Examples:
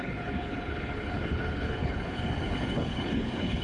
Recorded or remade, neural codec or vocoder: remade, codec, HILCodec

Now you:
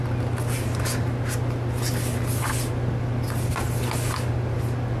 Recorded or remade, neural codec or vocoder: recorded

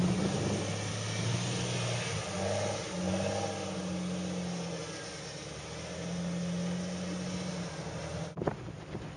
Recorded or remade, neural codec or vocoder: recorded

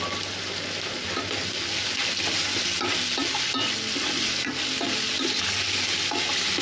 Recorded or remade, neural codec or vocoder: recorded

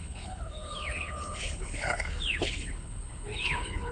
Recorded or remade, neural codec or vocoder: remade, codec, HILCodec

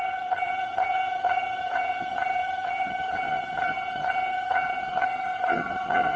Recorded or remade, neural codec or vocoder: remade, vocoder, HiFi-GAN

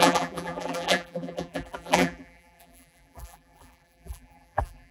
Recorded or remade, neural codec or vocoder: remade, vocoder, BigVGAN v2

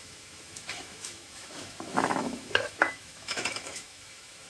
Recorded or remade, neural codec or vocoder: remade, autoencoder, DAC-VAE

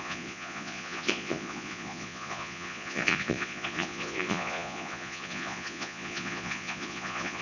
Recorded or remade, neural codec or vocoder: remade, vocoder, Vocos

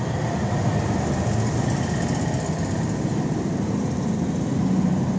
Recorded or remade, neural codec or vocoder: recorded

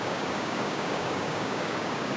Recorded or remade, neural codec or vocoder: remade, codec, DAC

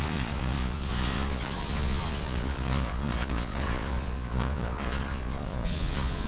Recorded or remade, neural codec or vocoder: remade, vocoder, Vocos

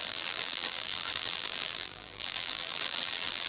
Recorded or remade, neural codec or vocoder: remade, vocoder, BigVGAN v2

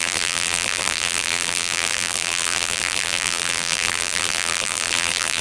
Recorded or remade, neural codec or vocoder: remade, vocoder, BigVGAN v2